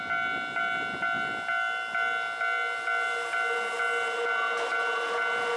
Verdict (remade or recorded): recorded